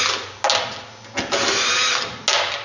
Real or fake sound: real